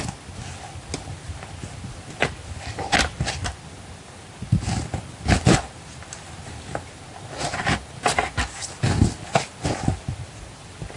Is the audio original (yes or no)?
yes